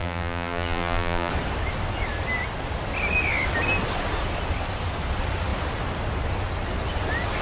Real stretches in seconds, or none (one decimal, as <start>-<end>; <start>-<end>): 1.3-7.4